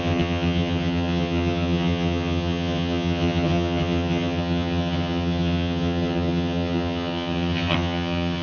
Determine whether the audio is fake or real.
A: fake